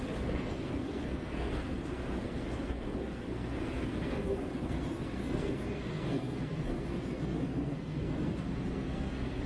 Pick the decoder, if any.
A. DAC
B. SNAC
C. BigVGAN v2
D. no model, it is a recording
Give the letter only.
B